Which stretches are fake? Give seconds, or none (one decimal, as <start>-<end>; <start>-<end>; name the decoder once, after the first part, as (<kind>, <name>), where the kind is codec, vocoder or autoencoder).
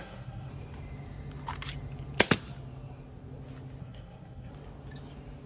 0.0-0.5 (codec, SNAC); 3.8-4.5